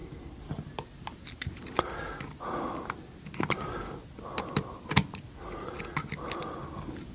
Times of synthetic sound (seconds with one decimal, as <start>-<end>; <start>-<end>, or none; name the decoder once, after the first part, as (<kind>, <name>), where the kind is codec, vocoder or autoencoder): none